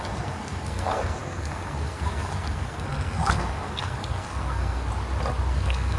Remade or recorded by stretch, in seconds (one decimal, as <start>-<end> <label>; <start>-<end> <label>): 0.0-4.9 remade; 4.9-5.5 recorded; 5.5-6.0 remade

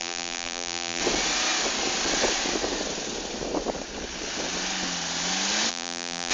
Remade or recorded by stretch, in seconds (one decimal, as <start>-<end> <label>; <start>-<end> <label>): 0.0-1.0 remade; 1.0-5.7 recorded; 5.7-6.3 remade

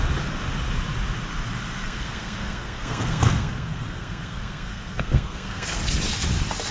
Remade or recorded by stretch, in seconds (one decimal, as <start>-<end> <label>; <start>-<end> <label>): 0.0-1.8 recorded; 1.8-5.8 remade; 5.8-6.7 recorded

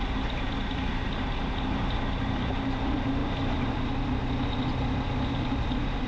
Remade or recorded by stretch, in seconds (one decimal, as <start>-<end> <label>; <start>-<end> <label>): 0.0-3.2 recorded; 3.2-4.2 remade; 4.2-6.1 recorded

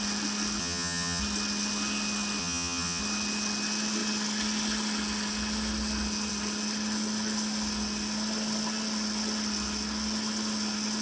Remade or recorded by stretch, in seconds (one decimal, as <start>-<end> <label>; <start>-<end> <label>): 0.0-0.6 recorded; 0.6-1.2 remade; 1.2-2.4 recorded; 2.4-3.0 remade; 3.0-11.0 recorded

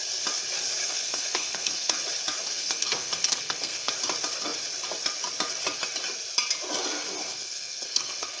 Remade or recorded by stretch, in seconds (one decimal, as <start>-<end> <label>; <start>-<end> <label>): 0.0-0.8 recorded; 0.8-2.0 remade; 2.0-2.4 recorded; 2.4-3.9 remade; 3.9-7.3 recorded; 7.3-8.4 remade

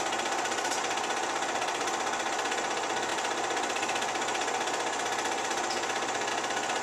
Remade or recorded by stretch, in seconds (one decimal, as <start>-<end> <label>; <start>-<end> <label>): 0.0-6.8 recorded

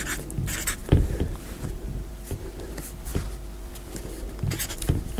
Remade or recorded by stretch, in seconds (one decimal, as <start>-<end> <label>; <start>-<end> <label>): 0.0-5.2 recorded